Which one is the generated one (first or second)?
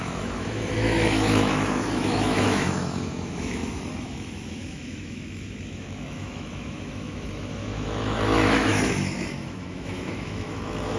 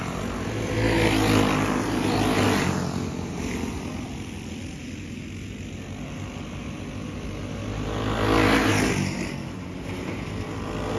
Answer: first